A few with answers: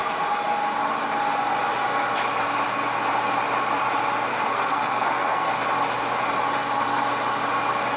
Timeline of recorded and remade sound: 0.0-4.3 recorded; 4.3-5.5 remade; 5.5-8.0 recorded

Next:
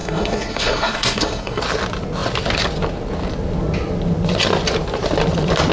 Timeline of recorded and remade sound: 0.0-1.6 remade; 1.6-5.7 recorded

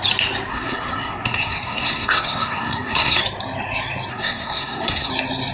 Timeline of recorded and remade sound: 0.0-0.5 recorded; 0.5-3.2 remade; 3.2-4.1 recorded; 4.1-5.1 remade; 5.1-5.5 recorded

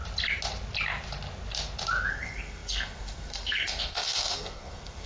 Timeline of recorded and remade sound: 0.0-2.1 recorded; 2.1-5.1 remade

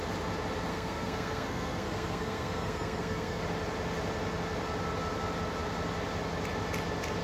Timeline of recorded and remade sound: 0.0-0.7 recorded; 0.7-3.4 remade; 3.4-7.2 recorded

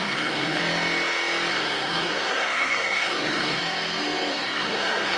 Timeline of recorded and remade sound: 0.0-0.6 remade; 0.6-1.5 recorded; 1.5-3.6 remade; 3.6-4.3 recorded; 4.3-5.2 remade

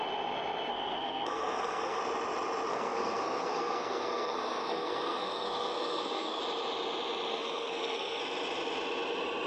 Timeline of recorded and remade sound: 0.0-0.7 recorded; 0.7-2.0 remade; 2.0-2.7 recorded; 2.7-6.4 remade; 6.4-7.3 recorded; 7.3-8.2 remade; 8.2-9.5 recorded